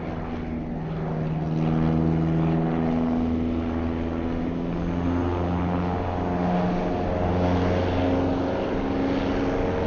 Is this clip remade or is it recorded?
recorded